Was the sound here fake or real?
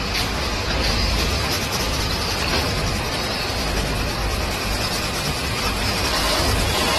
real